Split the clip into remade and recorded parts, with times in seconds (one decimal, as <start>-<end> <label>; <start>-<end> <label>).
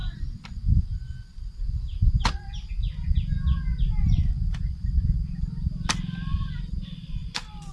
0.0-7.7 recorded